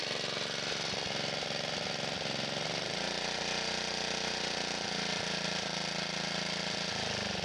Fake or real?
real